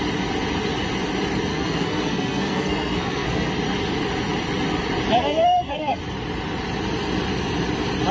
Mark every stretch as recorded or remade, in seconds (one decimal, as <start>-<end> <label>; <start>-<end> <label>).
0.0-1.5 recorded; 1.5-3.5 remade; 3.5-5.2 recorded; 5.2-6.0 remade; 6.0-8.1 recorded

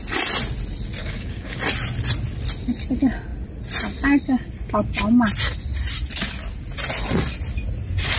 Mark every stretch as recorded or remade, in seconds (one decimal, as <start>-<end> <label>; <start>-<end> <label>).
0.0-1.0 recorded; 1.0-1.6 remade; 1.6-8.2 recorded

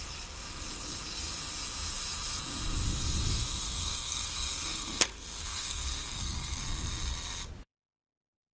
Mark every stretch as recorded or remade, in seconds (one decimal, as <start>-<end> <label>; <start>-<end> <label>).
0.0-3.8 recorded; 3.8-6.6 remade; 6.6-8.5 recorded

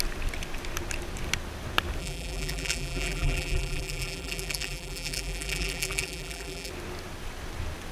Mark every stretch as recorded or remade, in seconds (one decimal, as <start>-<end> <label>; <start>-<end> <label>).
0.0-2.0 recorded; 2.0-6.7 remade; 6.7-7.9 recorded